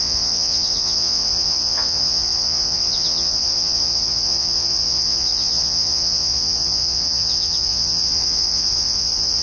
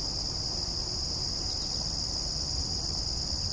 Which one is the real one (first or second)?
second